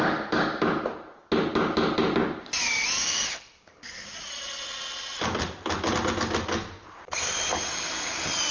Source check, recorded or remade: recorded